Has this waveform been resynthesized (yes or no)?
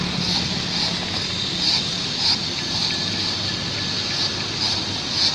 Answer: no